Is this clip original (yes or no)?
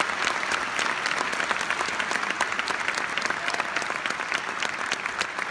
yes